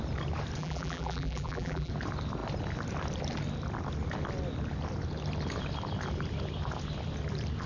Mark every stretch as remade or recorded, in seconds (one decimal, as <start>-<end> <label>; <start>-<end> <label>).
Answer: 0.0-0.6 recorded; 0.6-1.9 remade; 1.9-7.7 recorded